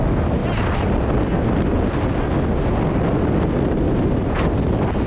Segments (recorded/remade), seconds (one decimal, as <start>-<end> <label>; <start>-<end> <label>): 0.0-5.1 recorded